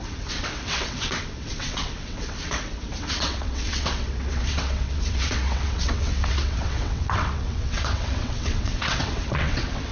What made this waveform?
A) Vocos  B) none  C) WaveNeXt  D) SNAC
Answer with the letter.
C